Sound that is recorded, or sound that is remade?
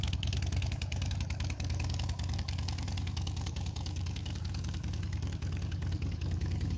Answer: remade